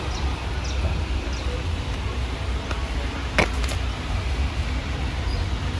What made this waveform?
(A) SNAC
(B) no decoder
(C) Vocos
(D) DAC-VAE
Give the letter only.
B